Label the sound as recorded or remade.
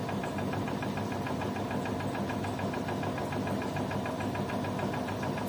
recorded